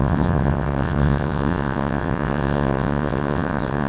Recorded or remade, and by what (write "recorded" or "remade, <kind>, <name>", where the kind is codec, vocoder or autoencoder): remade, vocoder, WaveNeXt